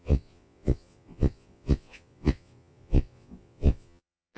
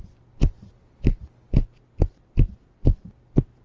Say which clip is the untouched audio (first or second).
second